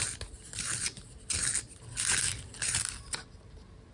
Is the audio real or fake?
real